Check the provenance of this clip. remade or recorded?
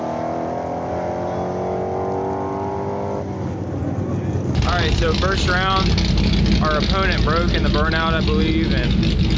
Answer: recorded